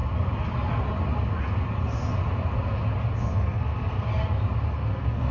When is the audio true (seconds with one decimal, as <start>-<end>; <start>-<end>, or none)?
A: 0.0-3.2; 4.1-4.7